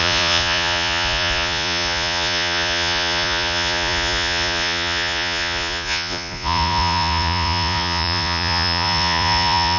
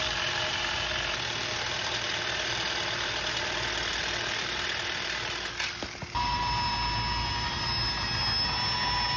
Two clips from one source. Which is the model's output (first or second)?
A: first